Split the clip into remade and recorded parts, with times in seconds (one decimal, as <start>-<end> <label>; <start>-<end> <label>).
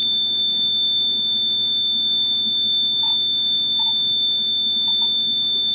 0.0-5.7 remade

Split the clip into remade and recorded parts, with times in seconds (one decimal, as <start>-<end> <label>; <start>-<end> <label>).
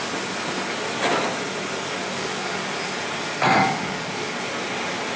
0.0-2.0 recorded; 2.0-2.7 remade; 2.7-3.6 recorded; 3.6-4.4 remade; 4.4-5.2 recorded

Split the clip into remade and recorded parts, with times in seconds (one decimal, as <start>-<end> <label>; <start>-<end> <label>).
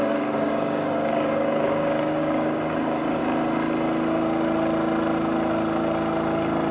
0.0-3.2 remade; 3.2-6.7 recorded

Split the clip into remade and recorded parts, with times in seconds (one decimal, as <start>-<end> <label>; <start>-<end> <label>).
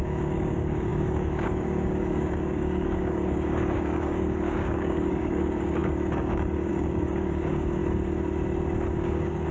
0.0-7.8 remade; 7.8-9.0 recorded; 9.0-9.5 remade